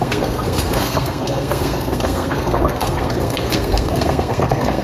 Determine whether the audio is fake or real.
fake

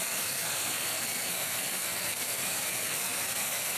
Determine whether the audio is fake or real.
fake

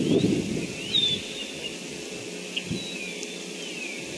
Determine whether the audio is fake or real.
real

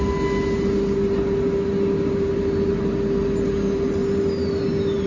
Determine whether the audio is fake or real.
real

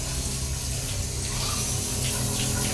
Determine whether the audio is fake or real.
real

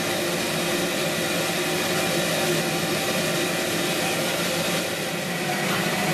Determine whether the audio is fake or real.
real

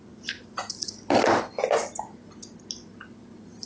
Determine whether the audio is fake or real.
real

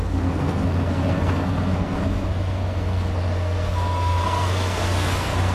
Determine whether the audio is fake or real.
fake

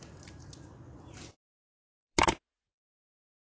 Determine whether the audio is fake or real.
real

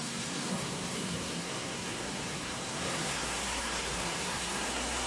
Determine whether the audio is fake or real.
fake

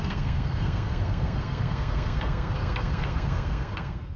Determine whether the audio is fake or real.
fake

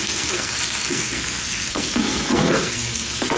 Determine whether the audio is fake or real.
fake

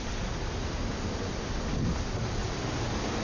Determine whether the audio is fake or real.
real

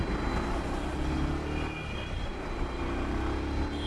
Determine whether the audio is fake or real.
real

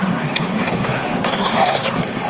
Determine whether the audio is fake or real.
fake